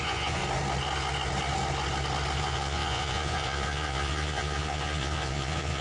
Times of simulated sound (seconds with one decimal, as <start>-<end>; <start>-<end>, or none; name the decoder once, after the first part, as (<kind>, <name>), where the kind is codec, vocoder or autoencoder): 0.0-0.4 (vocoder, Vocos); 2.4-5.8